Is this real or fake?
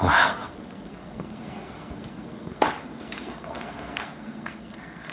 fake